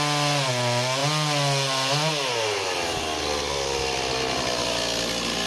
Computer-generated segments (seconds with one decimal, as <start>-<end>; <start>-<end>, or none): none